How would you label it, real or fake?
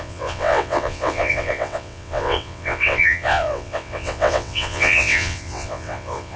fake